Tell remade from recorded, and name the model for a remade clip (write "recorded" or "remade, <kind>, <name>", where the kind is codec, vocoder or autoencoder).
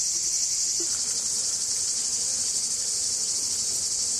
recorded